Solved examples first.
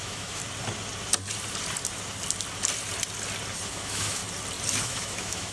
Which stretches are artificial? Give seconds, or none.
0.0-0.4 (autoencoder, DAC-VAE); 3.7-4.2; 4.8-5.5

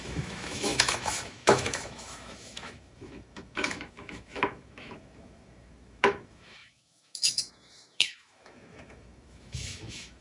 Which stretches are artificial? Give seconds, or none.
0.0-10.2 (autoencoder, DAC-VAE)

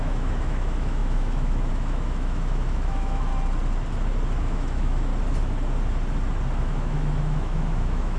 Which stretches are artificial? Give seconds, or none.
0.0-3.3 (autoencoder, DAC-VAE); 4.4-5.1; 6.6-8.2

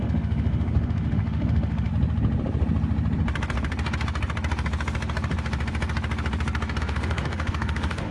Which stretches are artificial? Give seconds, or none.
0.0-1.9 (autoencoder, DAC-VAE); 6.8-8.1